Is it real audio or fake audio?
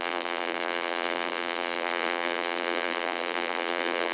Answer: fake